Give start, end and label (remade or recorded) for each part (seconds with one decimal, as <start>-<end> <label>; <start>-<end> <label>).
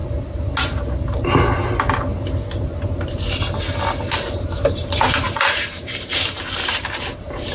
0.0-4.0 recorded; 4.0-7.5 remade